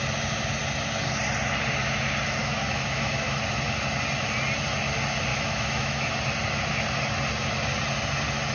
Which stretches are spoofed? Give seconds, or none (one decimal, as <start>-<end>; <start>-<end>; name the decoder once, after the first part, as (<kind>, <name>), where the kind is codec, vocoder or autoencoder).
2.4-3.4 (autoencoder, DAC-VAE); 5.3-6.1